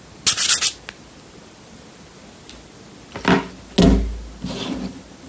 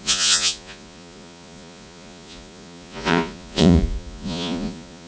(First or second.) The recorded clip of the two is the first